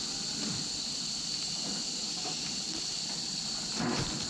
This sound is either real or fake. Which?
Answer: real